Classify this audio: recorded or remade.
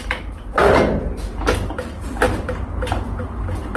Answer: recorded